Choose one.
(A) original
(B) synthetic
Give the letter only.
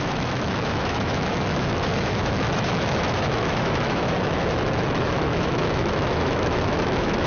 B